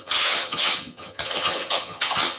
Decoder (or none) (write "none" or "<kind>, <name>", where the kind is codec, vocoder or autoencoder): vocoder, HiFi-GAN